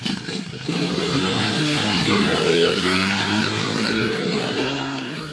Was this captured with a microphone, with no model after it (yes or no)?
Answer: no